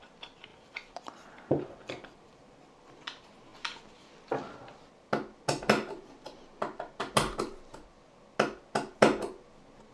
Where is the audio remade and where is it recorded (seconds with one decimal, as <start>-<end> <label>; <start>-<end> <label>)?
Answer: 0.0-0.5 recorded; 0.5-2.5 remade; 2.5-9.9 recorded